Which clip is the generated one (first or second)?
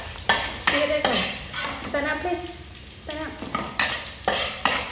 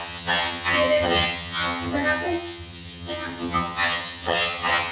second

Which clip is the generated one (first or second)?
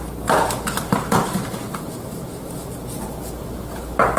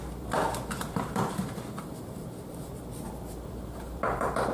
second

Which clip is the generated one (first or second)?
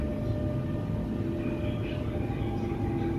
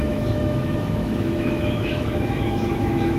second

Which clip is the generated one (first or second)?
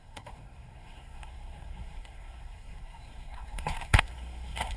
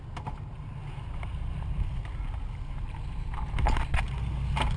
first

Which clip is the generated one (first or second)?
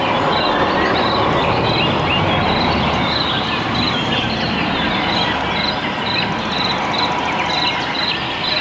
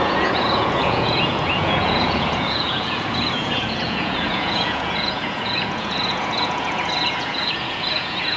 second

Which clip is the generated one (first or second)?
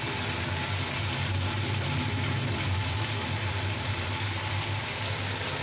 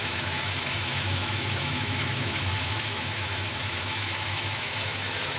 second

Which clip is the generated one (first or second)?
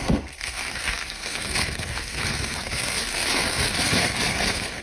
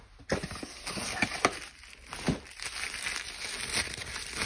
first